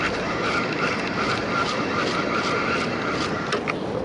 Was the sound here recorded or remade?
recorded